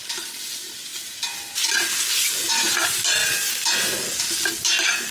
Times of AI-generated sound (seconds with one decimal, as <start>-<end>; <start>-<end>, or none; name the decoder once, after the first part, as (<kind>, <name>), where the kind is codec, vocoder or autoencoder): none